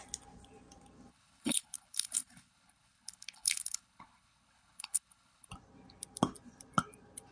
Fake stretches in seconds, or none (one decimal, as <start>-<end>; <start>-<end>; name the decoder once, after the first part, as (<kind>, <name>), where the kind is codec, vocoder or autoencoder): 1.1-5.5 (codec, HILCodec)